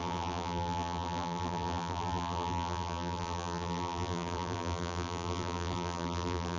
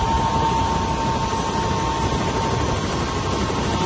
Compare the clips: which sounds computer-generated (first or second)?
first